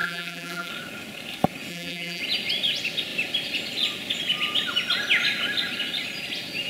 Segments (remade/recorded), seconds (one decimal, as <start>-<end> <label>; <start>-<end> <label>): 0.0-0.7 remade; 0.7-1.7 recorded; 1.7-2.2 remade; 2.2-6.7 recorded